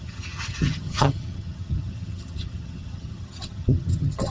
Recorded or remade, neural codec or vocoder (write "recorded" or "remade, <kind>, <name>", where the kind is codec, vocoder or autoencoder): remade, vocoder, HiFi-GAN